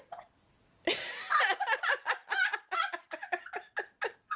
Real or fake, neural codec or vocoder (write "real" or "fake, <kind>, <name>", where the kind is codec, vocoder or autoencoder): real